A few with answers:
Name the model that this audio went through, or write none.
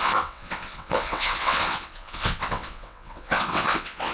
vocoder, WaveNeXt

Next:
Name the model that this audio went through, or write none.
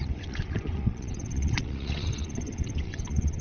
vocoder, WaveNeXt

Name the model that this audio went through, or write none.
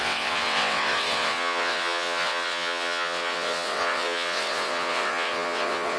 vocoder, WaveNeXt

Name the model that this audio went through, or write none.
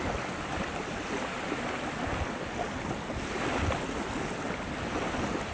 none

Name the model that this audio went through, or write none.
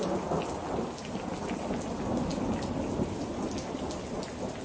none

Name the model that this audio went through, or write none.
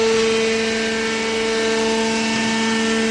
none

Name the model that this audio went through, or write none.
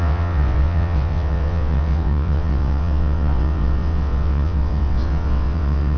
vocoder, WaveNeXt